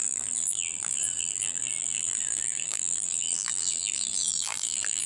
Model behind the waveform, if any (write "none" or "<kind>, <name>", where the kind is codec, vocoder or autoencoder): vocoder, BigVGAN v2